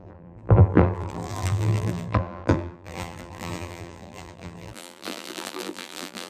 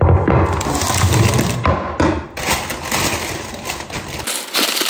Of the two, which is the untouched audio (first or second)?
second